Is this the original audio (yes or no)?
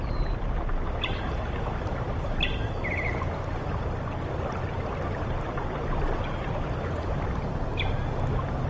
yes